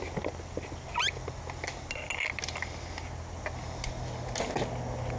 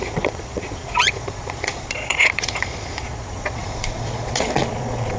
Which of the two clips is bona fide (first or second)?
first